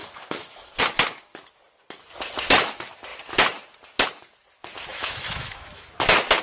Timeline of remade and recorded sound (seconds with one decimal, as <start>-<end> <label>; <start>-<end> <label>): 0.0-0.8 remade; 0.8-4.9 recorded; 4.9-5.9 remade; 5.9-6.4 recorded